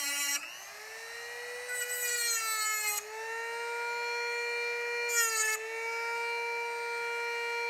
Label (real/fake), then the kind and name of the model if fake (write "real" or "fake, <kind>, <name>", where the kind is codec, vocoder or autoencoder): real